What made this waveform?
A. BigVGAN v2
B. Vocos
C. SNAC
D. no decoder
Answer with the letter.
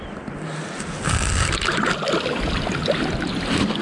D